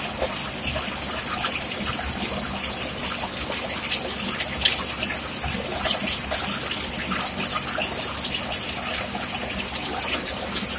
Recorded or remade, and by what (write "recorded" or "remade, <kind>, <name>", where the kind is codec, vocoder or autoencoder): recorded